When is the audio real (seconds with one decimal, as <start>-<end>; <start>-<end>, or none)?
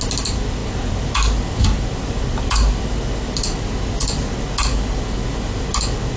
0.0-6.2